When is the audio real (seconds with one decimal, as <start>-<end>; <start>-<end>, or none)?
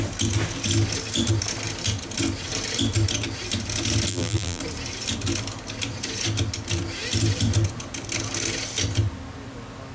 0.0-4.1; 4.6-9.9